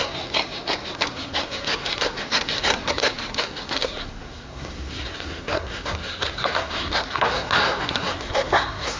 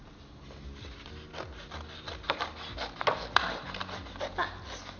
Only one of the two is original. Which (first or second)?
second